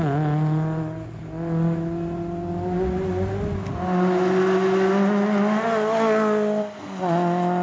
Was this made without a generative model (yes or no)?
yes